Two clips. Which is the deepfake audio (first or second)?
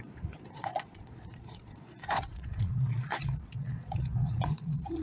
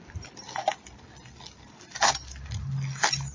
first